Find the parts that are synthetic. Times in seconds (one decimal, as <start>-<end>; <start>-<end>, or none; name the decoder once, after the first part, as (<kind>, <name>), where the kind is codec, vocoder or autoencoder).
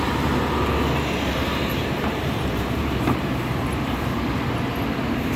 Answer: 1.3-4.5 (vocoder, BigVGAN v2)